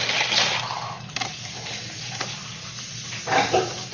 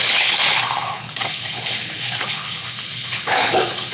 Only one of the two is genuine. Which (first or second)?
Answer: first